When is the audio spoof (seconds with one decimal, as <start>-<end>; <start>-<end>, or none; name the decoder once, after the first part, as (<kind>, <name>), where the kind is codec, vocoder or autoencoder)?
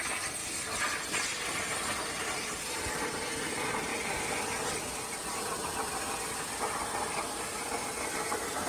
none